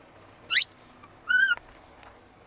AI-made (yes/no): no